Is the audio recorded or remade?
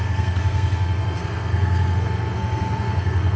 remade